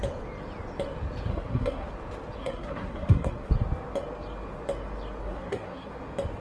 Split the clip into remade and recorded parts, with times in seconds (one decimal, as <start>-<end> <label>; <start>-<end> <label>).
0.0-1.3 recorded; 1.3-1.9 remade; 1.9-2.4 recorded; 2.4-3.5 remade; 3.5-5.2 recorded; 5.2-5.9 remade; 5.9-6.4 recorded